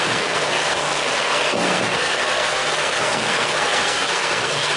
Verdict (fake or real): fake